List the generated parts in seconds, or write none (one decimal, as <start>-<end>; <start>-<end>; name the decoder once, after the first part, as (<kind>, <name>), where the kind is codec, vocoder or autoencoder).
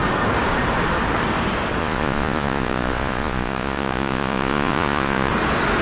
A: 1.8-5.3 (vocoder, Vocos)